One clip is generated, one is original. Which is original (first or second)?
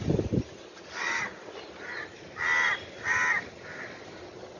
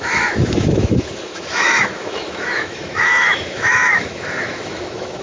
first